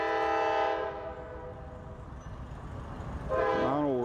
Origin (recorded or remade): recorded